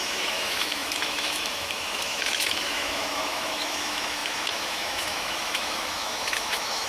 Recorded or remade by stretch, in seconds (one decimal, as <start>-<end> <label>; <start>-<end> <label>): 0.0-6.9 remade